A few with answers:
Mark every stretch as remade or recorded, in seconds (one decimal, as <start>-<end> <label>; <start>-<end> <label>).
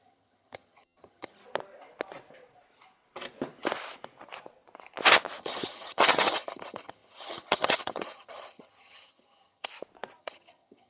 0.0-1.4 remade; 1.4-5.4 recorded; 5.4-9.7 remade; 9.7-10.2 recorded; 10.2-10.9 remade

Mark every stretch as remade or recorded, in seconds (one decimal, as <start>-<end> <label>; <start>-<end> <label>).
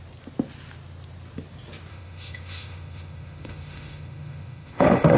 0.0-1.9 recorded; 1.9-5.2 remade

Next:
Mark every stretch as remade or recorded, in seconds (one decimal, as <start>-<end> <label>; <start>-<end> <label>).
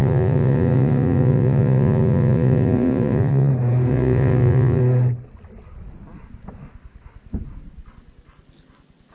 0.0-3.5 remade; 3.5-3.9 recorded; 3.9-4.8 remade; 4.8-9.1 recorded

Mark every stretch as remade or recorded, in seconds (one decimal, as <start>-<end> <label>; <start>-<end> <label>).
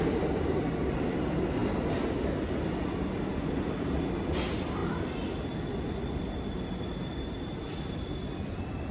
0.0-8.9 recorded